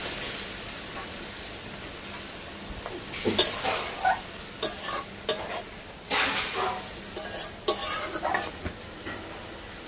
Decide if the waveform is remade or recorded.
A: recorded